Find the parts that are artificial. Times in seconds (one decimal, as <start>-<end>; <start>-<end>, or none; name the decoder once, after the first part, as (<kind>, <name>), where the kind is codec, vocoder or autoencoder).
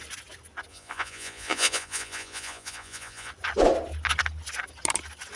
0.7-3.3 (vocoder, Vocos)